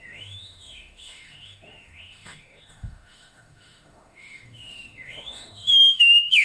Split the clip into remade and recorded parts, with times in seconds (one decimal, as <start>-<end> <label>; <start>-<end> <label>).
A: 0.0-6.4 remade